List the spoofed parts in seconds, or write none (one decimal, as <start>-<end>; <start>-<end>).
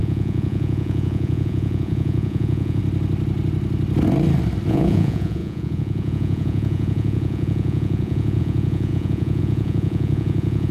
0.0-2.8; 4.7-10.7